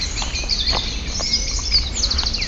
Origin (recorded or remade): recorded